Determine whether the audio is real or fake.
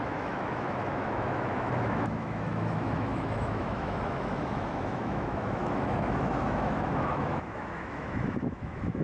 fake